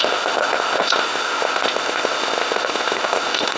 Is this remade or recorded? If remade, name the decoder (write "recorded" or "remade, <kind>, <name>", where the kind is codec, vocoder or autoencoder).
remade, codec, ZipCodec